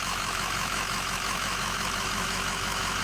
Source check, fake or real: fake